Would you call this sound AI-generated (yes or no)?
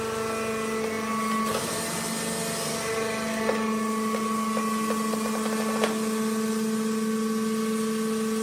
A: no